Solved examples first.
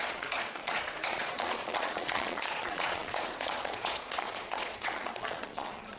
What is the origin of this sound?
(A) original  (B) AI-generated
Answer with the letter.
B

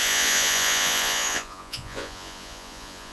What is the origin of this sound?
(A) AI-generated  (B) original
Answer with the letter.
A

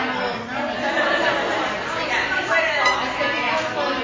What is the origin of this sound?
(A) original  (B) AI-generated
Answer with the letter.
A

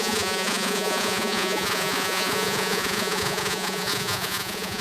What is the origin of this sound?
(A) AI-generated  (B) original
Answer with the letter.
A